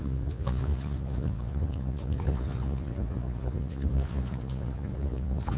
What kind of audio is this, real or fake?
fake